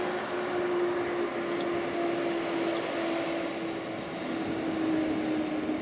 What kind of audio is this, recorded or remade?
recorded